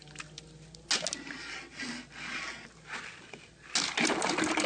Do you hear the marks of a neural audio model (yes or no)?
no